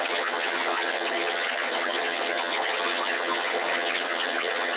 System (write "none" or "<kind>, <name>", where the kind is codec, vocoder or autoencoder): vocoder, HiFi-GAN